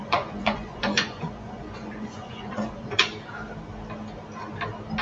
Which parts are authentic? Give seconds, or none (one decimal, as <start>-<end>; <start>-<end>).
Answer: 3.0-5.0